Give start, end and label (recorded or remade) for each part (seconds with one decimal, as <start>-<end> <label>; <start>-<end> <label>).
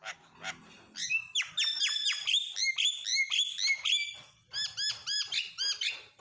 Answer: 0.0-5.0 recorded; 5.0-6.2 remade